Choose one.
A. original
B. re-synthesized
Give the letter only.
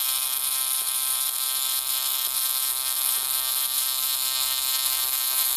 B